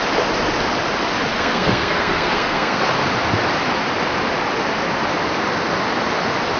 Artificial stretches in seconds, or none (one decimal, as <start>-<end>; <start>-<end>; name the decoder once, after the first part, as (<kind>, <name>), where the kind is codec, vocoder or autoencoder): 1.3-2.8 (codec, SNAC)